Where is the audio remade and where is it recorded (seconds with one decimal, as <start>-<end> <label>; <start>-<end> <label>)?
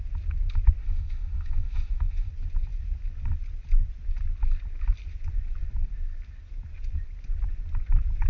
0.0-0.8 recorded; 0.8-2.3 remade; 2.3-8.3 recorded